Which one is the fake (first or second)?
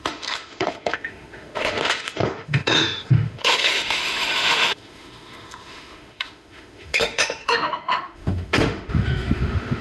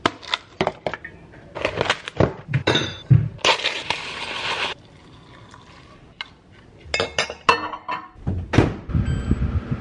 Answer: first